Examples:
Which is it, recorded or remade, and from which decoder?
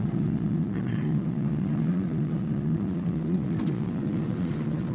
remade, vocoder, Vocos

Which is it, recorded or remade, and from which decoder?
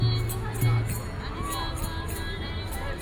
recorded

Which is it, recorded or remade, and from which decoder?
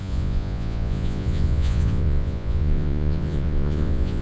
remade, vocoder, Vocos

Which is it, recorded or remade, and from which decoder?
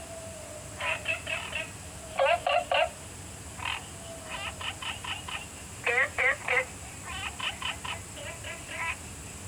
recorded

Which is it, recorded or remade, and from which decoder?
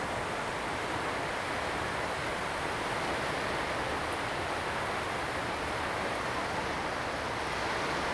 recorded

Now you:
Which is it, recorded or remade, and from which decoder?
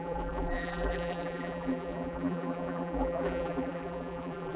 remade, vocoder, BigVGAN v2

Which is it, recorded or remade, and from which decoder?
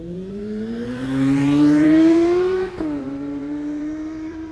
remade, vocoder, BigVGAN v2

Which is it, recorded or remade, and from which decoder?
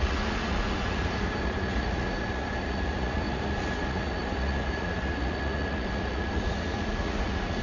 remade, vocoder, Vocos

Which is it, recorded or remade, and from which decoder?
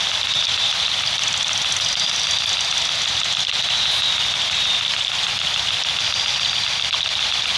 recorded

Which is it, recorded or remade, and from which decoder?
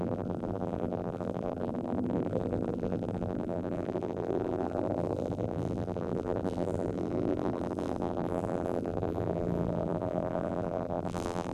remade, vocoder, BigVGAN v2